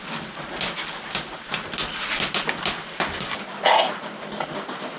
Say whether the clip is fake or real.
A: real